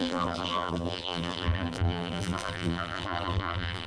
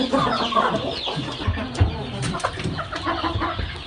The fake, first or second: first